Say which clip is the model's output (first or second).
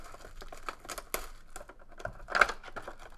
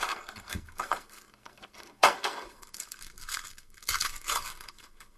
second